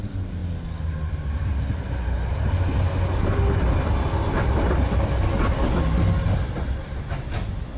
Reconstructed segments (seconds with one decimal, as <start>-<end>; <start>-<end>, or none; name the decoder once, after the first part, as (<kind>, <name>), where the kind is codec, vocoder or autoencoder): none